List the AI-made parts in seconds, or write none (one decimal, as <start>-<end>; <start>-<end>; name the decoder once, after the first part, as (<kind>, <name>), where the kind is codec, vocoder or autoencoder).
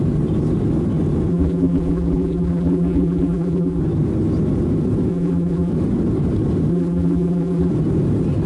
1.3-3.8 (vocoder, BigVGAN v2); 5.1-5.7; 6.7-7.7